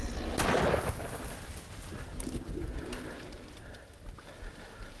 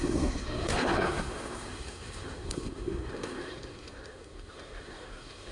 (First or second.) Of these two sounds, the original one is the first